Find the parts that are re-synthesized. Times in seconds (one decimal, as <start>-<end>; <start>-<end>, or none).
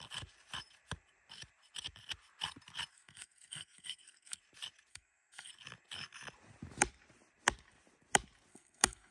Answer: 2.9-4.4; 4.9-5.5; 8.5-9.1